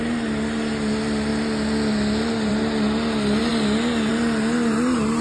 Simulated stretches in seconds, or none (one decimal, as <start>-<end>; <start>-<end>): none